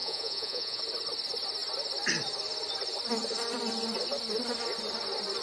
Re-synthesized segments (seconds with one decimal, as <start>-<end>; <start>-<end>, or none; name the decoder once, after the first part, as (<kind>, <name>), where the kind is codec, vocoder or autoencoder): 0.0-0.8 (vocoder, Vocos)